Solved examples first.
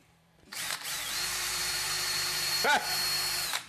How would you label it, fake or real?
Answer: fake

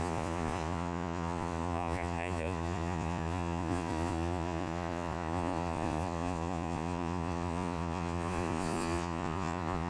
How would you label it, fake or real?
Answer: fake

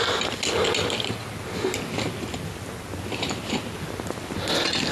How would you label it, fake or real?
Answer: real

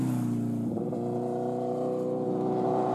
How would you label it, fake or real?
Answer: real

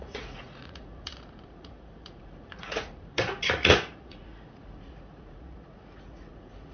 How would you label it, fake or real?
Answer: fake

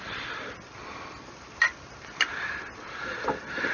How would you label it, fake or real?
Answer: real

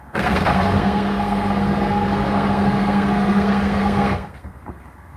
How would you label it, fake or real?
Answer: fake